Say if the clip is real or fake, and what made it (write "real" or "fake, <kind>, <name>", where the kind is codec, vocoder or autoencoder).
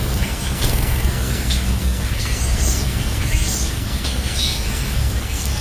fake, codec, SNAC